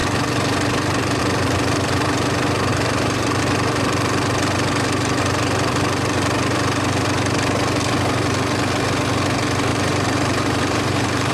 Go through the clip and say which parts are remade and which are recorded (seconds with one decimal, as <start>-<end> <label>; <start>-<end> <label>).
0.0-2.7 recorded; 2.7-3.4 remade; 3.4-9.7 recorded; 9.7-11.3 remade